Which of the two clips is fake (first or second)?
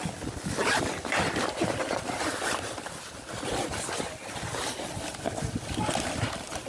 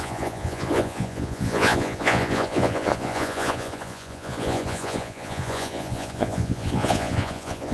second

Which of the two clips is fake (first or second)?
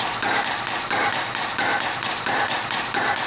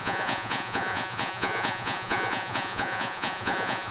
second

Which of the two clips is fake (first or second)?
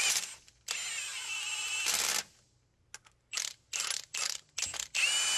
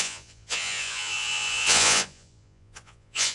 second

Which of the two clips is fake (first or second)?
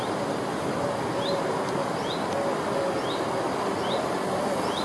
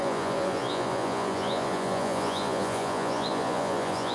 second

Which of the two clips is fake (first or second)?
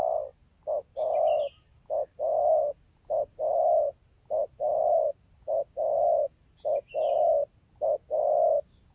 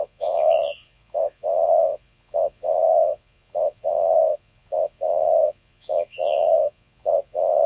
second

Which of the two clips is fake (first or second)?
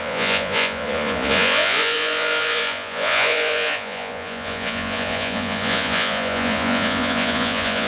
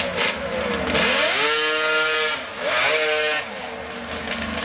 first